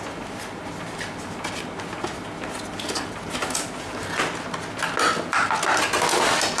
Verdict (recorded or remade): recorded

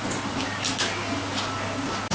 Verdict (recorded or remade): recorded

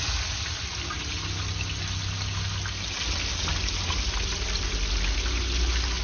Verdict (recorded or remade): recorded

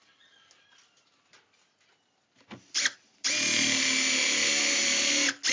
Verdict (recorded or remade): recorded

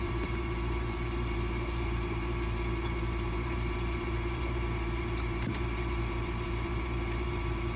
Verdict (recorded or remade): remade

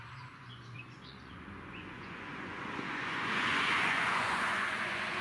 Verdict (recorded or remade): remade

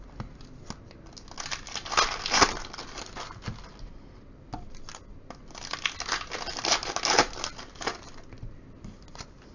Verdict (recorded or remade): recorded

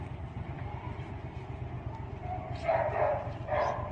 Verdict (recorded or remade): recorded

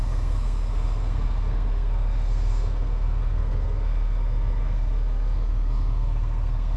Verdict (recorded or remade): remade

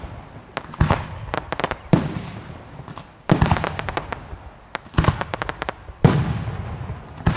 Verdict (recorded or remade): recorded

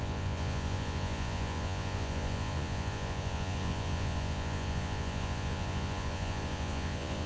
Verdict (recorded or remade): remade